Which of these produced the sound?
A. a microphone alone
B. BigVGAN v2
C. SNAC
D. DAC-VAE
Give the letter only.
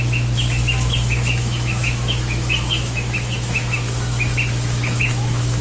D